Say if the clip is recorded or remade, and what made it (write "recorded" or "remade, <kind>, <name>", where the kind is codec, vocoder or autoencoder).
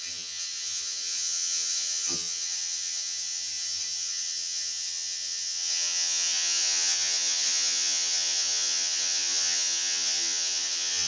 remade, vocoder, HiFi-GAN